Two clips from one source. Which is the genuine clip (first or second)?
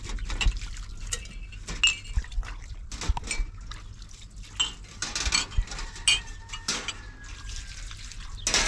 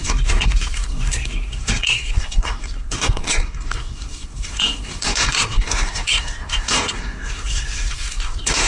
first